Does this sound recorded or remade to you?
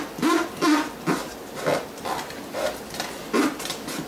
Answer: recorded